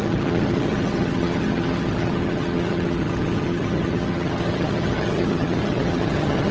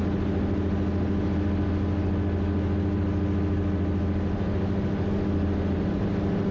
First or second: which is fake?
first